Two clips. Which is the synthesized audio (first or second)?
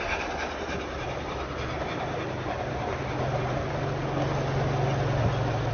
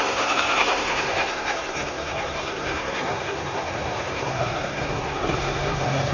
second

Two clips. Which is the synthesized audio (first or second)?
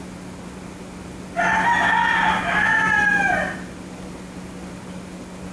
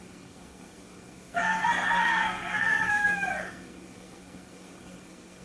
second